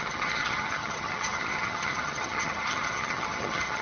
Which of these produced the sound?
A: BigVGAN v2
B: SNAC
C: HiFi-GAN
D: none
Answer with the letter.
C